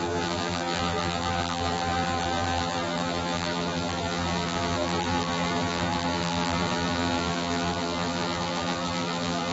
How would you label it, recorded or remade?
remade